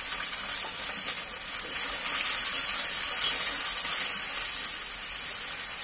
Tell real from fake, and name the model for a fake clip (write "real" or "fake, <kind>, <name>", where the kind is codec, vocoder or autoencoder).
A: real